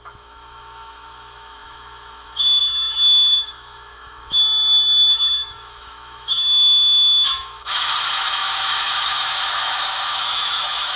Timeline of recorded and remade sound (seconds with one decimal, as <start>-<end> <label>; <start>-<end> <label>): 0.0-4.4 remade; 4.4-5.1 recorded; 5.1-11.0 remade